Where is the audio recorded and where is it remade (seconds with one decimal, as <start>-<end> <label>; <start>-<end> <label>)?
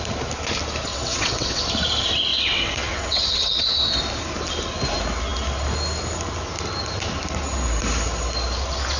0.0-0.9 recorded; 0.9-1.6 remade; 1.6-2.3 recorded; 2.3-4.0 remade; 4.0-9.0 recorded